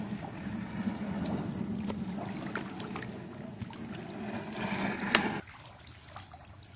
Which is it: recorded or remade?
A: recorded